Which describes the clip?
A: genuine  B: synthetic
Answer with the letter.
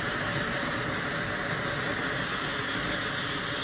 A